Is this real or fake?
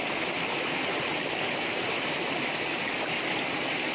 real